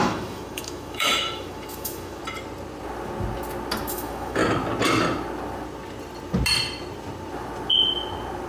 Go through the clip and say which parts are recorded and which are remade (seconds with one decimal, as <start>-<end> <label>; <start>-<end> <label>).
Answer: 0.0-2.2 remade; 2.2-3.9 recorded; 3.9-4.4 remade; 4.4-8.5 recorded